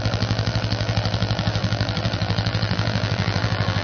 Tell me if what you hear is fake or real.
fake